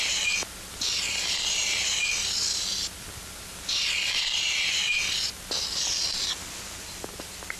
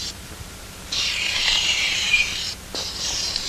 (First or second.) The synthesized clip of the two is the second